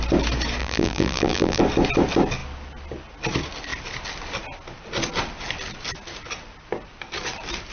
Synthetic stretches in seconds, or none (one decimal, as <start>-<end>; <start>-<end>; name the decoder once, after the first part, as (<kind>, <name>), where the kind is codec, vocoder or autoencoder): 0.6-1.6 (vocoder, BigVGAN v2)